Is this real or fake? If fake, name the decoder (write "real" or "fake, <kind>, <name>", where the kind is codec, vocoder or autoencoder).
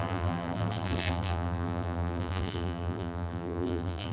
fake, vocoder, BigVGAN v2